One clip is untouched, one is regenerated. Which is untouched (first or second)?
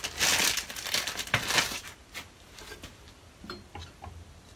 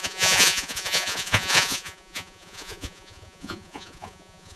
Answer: first